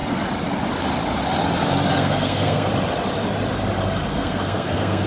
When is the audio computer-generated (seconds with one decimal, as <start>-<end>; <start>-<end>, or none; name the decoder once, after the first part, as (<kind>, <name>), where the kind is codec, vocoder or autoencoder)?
1.9-2.7 (codec, SNAC); 4.1-5.1